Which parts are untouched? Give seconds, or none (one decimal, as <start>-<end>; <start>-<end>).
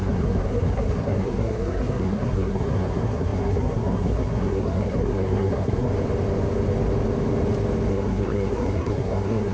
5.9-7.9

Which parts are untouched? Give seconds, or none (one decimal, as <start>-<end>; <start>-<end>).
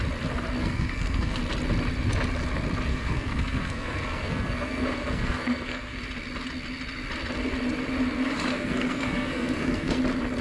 0.0-0.6; 1.4-2.9; 6.0-8.5; 10.0-10.4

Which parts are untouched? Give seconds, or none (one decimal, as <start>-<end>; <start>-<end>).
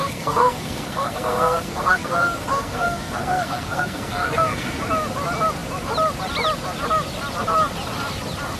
4.8-8.6